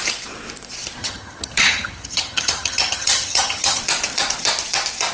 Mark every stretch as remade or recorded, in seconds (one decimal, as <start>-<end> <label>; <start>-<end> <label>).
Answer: 0.0-1.0 recorded; 1.0-3.8 remade; 3.8-5.1 recorded